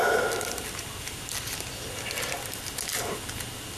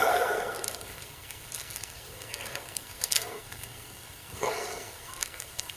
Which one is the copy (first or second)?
second